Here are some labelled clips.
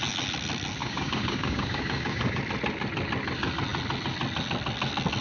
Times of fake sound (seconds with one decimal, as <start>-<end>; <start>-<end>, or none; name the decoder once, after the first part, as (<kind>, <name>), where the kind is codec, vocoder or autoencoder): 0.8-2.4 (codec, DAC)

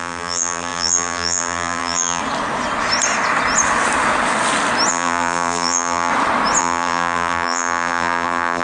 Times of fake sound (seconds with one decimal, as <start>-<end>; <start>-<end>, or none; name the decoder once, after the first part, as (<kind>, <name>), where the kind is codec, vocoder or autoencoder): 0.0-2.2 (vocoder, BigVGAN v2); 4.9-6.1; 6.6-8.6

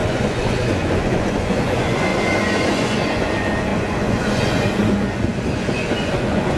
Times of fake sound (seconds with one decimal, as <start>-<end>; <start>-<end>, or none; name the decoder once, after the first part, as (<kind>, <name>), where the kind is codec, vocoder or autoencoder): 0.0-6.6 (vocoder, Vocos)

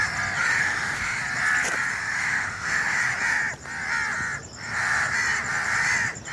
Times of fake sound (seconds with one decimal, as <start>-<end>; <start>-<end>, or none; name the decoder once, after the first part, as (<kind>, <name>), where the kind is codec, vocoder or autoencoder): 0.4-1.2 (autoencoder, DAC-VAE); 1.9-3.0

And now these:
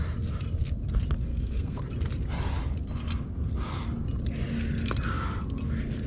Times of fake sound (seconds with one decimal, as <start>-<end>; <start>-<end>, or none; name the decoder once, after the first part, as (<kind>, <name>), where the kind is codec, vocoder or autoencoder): 1.3-1.8 (codec, SNAC)

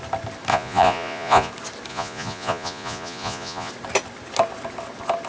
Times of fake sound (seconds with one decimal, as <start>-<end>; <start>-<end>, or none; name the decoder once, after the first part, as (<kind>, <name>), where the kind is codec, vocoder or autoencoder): 0.5-1.5 (vocoder, Vocos); 1.9-3.7